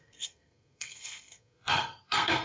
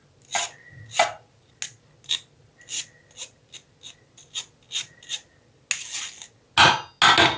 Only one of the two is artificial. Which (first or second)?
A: first